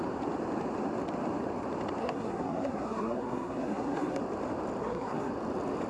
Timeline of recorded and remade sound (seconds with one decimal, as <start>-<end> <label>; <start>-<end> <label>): 0.0-2.0 recorded; 2.0-4.2 remade; 4.2-4.8 recorded; 4.8-5.3 remade; 5.3-5.9 recorded